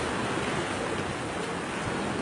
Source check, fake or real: real